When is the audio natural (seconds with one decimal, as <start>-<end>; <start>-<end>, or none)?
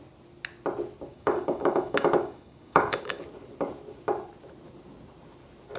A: 0.0-1.1; 3.2-5.8